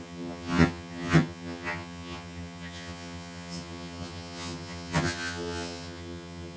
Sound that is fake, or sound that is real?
fake